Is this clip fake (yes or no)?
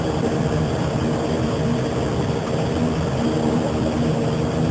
yes